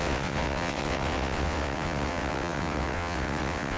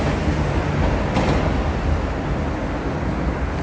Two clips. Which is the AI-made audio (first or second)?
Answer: first